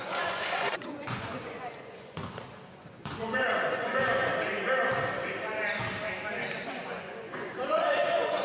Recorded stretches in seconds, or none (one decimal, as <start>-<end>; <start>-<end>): 2.2-2.7; 4.3-6.7

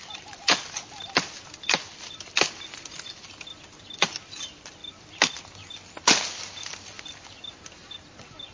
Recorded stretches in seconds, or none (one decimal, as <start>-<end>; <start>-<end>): 0.0-8.5

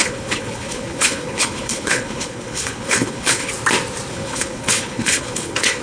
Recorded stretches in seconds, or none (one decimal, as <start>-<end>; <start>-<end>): 3.5-4.1

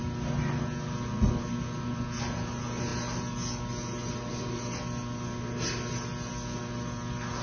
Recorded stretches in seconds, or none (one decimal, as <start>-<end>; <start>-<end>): 0.0-7.4

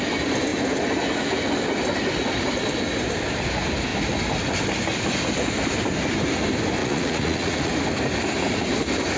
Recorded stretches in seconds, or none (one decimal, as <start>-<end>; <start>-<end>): 0.0-6.8; 7.7-9.2

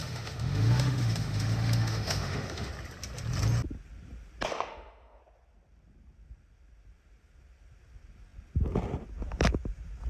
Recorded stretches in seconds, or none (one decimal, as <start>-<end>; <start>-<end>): 2.7-4.5; 5.2-10.1

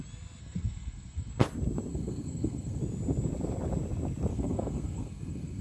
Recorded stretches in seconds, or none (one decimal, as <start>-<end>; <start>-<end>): 0.0-0.4; 1.3-1.9; 2.8-4.3